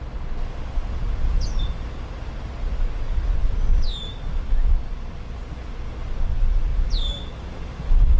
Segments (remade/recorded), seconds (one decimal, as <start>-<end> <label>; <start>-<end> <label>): 0.0-8.2 recorded